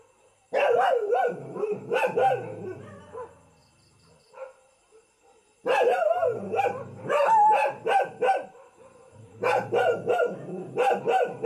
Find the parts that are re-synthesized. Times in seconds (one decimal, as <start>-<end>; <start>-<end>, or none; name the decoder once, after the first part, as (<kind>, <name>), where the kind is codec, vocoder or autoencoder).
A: none